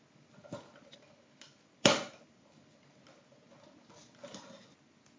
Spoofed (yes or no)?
no